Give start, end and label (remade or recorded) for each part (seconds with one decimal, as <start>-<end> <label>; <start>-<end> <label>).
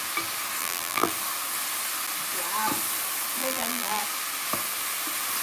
0.0-0.6 recorded; 0.6-1.1 remade; 1.1-3.4 recorded; 3.4-4.0 remade; 4.0-5.4 recorded